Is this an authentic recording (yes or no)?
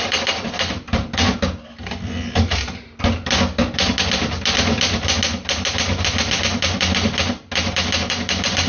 yes